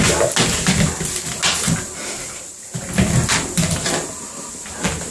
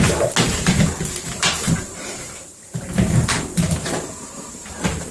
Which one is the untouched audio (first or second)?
first